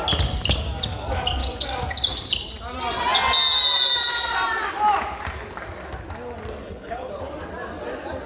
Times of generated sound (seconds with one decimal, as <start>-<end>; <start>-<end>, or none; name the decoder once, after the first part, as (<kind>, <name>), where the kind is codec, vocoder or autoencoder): 6.6-7.1 (codec, HILCodec)